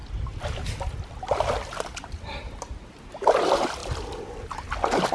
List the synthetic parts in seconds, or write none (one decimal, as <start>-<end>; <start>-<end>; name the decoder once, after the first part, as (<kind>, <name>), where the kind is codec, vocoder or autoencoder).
none